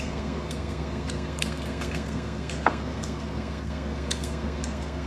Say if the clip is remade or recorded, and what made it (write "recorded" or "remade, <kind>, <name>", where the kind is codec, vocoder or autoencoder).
remade, codec, SNAC